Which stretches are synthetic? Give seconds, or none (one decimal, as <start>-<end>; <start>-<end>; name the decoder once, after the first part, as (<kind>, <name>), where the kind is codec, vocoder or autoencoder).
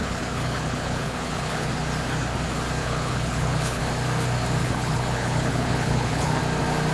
0.0-1.7 (codec, HILCodec); 2.8-3.8; 4.6-6.4